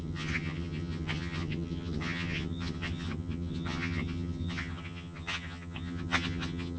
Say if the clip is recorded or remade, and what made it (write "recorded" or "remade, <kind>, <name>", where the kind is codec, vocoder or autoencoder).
remade, vocoder, HiFi-GAN